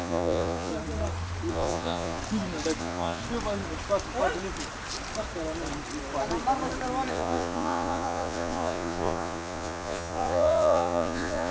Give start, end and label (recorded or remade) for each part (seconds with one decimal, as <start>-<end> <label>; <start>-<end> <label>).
0.0-0.7 remade; 0.7-1.5 recorded; 1.5-2.2 remade; 2.2-2.8 recorded; 2.8-3.2 remade; 3.2-7.1 recorded; 7.1-11.5 remade